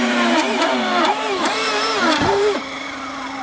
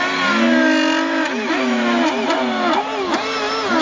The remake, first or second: first